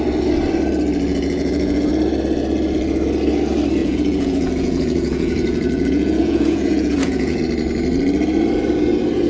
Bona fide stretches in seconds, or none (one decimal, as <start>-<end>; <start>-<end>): 0.0-1.1; 1.9-3.8; 7.4-9.3